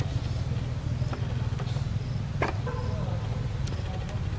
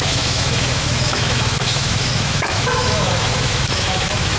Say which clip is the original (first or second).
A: first